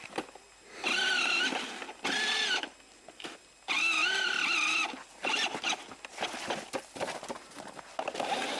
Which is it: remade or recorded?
recorded